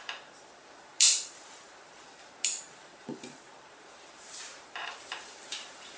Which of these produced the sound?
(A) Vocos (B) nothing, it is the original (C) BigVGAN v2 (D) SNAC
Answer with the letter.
C